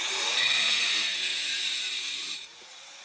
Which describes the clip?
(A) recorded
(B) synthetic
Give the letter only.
B